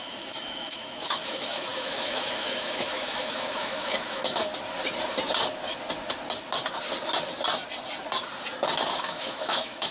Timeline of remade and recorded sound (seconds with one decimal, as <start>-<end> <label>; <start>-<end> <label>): 0.0-4.5 remade; 4.5-9.0 recorded; 9.0-9.9 remade